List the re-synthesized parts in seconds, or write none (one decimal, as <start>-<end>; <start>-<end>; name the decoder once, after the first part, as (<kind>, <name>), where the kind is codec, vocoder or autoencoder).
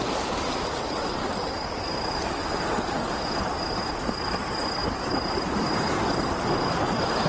1.2-2.9 (vocoder, BigVGAN v2); 4.8-5.9